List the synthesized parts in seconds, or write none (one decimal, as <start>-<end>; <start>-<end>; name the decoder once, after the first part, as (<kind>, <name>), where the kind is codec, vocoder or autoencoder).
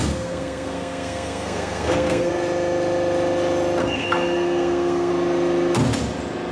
0.0-2.3 (codec, SNAC); 3.8-5.1